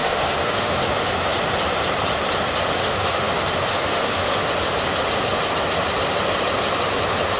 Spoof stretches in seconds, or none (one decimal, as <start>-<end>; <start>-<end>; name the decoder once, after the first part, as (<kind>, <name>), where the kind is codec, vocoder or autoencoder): 0.0-0.9 (autoencoder, DAC-VAE); 2.8-3.3; 3.7-4.5